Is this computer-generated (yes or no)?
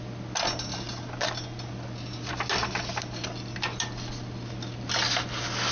no